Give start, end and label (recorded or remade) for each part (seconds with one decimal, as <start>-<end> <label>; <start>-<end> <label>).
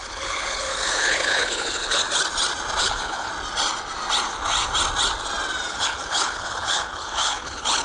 0.0-2.0 remade; 2.0-2.8 recorded; 2.8-3.3 remade; 3.3-5.7 recorded; 5.7-7.8 remade